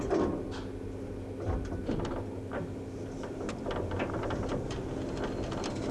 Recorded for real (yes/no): yes